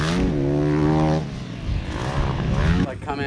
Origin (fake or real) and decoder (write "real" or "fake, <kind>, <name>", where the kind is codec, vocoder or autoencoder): real